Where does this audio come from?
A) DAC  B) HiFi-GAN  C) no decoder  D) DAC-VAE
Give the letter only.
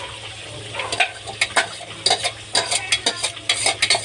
C